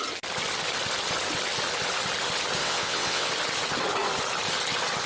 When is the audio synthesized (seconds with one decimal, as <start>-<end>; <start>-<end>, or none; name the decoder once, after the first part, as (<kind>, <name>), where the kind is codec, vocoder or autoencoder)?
2.6-3.3 (vocoder, WaveNeXt)